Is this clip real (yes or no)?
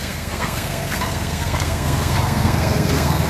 no